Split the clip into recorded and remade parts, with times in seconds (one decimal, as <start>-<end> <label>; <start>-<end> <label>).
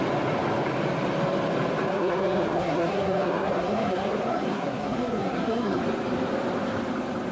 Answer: 0.0-1.9 recorded; 1.9-5.8 remade; 5.8-7.3 recorded